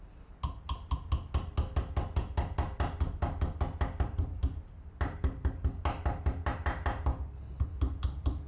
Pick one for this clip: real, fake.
real